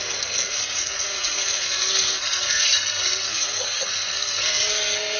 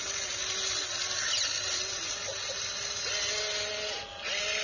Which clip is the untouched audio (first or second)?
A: second